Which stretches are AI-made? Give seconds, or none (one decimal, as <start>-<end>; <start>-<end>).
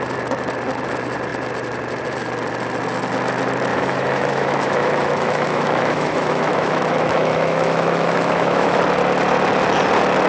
3.7-8.8